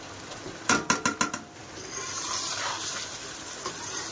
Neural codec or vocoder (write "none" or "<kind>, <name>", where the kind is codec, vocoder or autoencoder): none